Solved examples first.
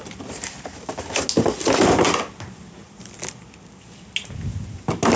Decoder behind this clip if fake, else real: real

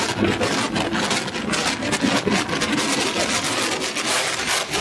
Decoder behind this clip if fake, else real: real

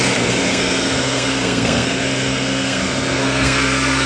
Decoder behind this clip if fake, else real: fake, codec, SNAC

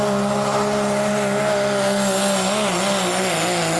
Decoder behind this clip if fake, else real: real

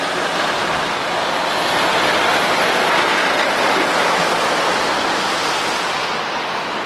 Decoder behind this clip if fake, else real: real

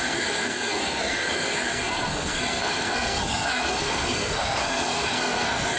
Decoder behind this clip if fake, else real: fake, codec, SNAC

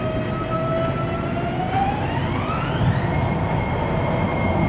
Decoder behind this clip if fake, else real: real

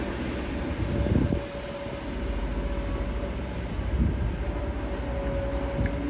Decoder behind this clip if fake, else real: real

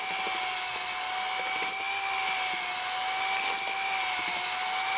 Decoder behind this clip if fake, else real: real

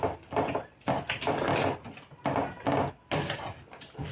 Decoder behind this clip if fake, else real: real